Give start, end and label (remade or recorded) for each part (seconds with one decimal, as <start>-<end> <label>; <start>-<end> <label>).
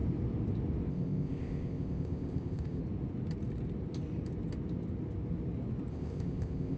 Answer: 0.0-0.9 recorded; 0.9-2.8 remade; 2.8-5.9 recorded; 5.9-6.8 remade